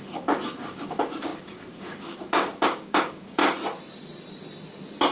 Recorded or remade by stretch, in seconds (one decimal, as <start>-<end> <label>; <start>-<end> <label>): 0.0-3.4 remade; 3.4-5.1 recorded